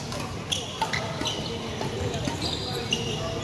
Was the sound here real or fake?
real